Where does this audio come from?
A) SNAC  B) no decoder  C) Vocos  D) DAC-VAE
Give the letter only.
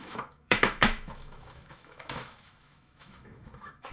D